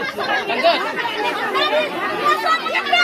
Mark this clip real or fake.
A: real